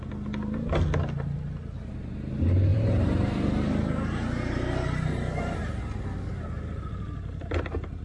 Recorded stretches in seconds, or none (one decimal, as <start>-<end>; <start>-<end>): 0.0-2.7; 5.8-8.0